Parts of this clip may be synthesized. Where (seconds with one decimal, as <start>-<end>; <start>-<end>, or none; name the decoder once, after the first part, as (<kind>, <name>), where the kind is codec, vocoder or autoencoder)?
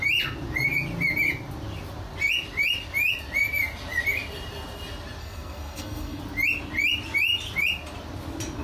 5.2-6.2 (codec, SNAC)